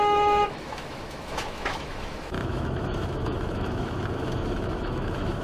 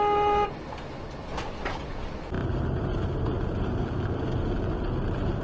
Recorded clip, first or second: second